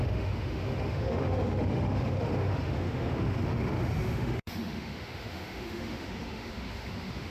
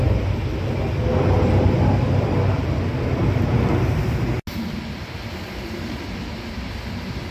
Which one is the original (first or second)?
second